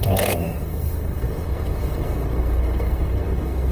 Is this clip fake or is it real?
fake